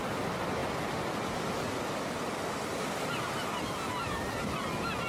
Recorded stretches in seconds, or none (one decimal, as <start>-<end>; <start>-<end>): 0.0-5.1